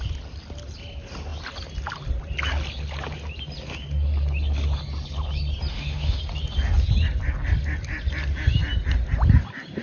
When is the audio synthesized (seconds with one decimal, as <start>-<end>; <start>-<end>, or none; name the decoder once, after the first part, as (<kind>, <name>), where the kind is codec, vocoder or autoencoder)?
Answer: 5.7-6.2 (autoencoder, DAC-VAE)